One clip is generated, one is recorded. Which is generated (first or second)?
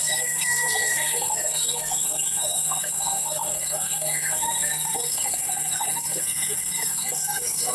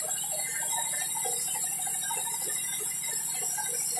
first